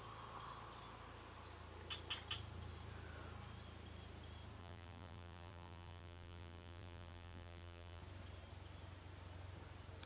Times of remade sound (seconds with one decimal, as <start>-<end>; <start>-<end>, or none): 4.6-8.0